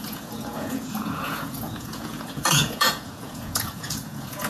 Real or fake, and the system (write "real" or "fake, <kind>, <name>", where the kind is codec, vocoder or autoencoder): fake, vocoder, Vocos